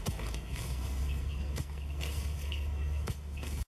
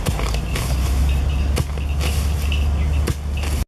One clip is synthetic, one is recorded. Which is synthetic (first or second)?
first